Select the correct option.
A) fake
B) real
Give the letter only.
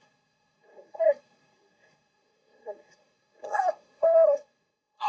A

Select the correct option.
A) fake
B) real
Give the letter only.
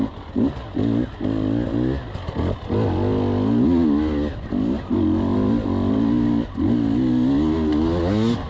B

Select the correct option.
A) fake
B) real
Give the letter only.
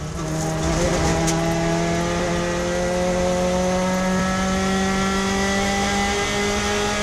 B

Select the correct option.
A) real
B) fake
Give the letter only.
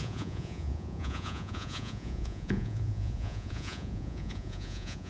B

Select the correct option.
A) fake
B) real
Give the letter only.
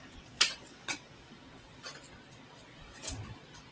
A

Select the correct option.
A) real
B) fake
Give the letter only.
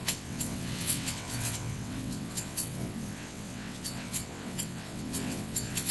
B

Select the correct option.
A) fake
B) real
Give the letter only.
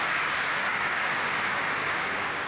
A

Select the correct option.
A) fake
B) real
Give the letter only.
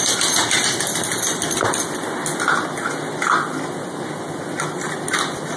B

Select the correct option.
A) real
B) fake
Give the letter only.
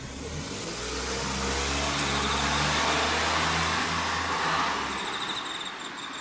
A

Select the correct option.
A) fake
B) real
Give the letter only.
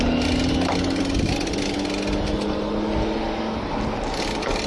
B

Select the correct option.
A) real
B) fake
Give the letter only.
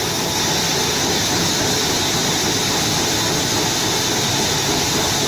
A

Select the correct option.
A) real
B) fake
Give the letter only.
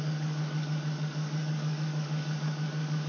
B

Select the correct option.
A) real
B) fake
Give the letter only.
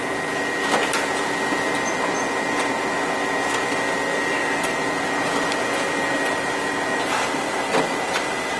A